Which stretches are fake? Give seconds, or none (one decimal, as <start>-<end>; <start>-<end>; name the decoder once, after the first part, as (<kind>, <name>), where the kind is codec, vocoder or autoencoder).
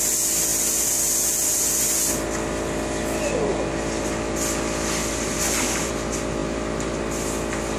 5.0-5.9 (vocoder, BigVGAN v2)